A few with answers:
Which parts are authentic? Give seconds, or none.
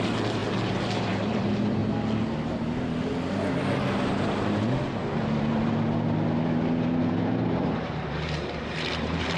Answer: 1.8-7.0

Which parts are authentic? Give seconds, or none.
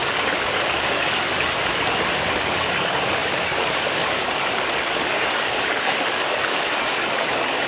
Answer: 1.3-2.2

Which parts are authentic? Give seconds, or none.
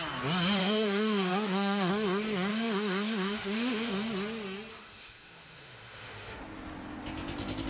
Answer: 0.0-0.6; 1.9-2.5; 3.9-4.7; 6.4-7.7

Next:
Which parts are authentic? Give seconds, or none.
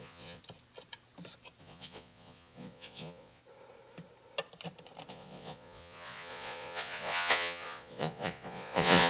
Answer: 0.4-1.6; 3.4-5.1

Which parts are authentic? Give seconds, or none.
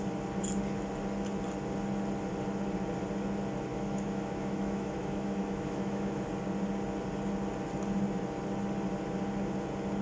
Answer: 0.0-3.7; 6.3-10.0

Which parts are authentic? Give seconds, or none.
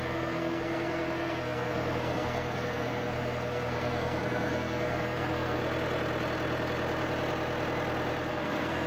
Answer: 5.6-8.3